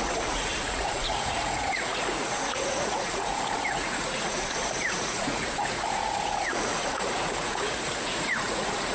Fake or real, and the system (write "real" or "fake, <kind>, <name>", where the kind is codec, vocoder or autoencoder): fake, vocoder, Vocos